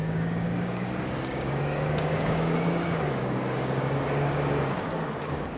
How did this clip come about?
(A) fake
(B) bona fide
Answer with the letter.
A